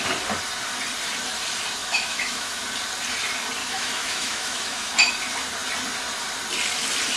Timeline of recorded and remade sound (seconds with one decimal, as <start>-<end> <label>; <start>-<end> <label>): 0.0-1.8 recorded; 1.8-2.6 remade; 2.6-3.6 recorded; 3.6-4.9 remade; 4.9-7.2 recorded